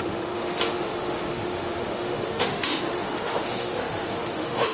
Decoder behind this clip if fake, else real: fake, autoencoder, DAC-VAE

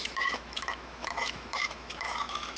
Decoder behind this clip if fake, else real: fake, autoencoder, DAC-VAE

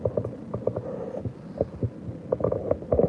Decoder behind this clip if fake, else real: real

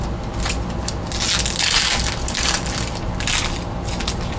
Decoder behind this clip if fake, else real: real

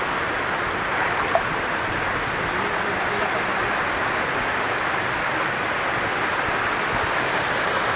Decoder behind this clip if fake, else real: real